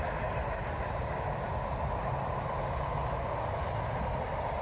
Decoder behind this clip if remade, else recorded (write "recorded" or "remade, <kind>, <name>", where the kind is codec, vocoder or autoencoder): recorded